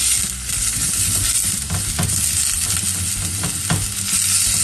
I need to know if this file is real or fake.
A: real